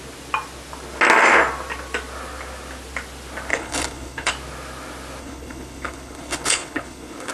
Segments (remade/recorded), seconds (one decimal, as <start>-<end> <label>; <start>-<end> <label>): 0.0-3.5 recorded; 3.5-4.3 remade; 4.3-5.2 recorded; 5.2-7.3 remade